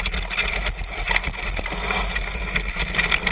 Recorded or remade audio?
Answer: recorded